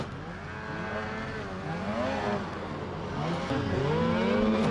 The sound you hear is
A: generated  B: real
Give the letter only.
B